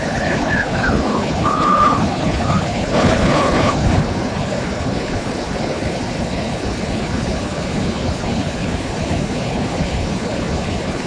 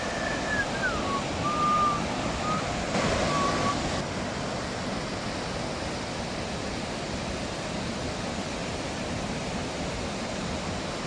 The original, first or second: second